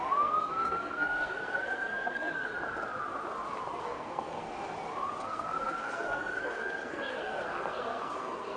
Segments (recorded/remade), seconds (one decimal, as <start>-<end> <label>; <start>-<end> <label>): 0.0-2.5 remade; 2.5-3.8 recorded; 3.8-4.6 remade; 4.6-5.2 recorded; 5.2-8.6 remade